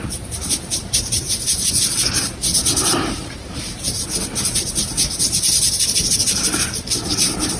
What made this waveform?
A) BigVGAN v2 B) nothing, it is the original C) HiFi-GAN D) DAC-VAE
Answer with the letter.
A